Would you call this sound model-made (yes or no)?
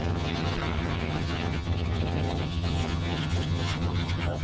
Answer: yes